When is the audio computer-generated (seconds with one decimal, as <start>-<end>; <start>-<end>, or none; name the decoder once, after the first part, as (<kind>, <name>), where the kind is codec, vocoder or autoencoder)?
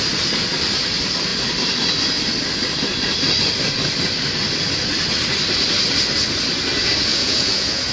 7.1-7.9 (vocoder, Vocos)